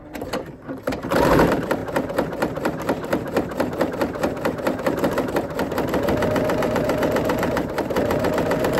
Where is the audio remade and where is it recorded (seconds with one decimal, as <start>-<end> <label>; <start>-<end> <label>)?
0.0-5.6 remade; 5.6-6.6 recorded; 6.6-8.8 remade

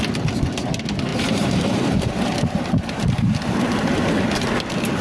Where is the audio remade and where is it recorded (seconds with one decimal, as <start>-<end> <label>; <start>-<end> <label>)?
0.0-1.1 recorded; 1.1-4.1 remade; 4.1-5.0 recorded

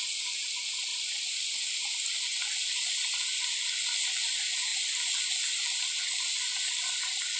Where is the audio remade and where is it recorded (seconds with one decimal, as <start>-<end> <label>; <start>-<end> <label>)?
0.0-0.9 recorded; 0.9-1.6 remade; 1.6-2.3 recorded; 2.3-2.9 remade; 2.9-6.5 recorded; 6.5-7.4 remade

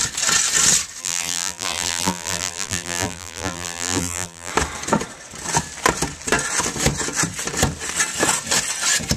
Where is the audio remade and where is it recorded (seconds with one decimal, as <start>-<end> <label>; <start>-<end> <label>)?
0.0-1.0 recorded; 1.0-4.5 remade; 4.5-9.2 recorded

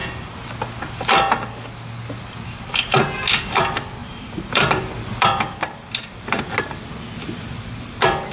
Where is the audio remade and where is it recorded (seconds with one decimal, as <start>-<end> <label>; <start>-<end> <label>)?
0.0-4.0 recorded; 4.0-4.8 remade; 4.8-8.3 recorded